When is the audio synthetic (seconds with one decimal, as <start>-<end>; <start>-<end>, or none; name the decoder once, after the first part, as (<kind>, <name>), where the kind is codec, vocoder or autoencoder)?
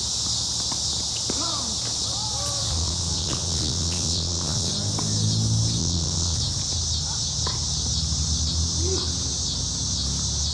2.6-4.7 (vocoder, Vocos); 5.8-6.4